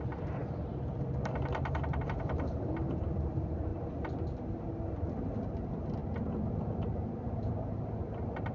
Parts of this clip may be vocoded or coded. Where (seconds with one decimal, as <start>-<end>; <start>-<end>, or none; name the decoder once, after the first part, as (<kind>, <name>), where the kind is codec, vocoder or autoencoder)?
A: 0.0-3.7 (vocoder, BigVGAN v2); 5.0-6.0; 6.5-8.5